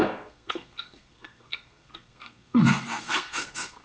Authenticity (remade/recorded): remade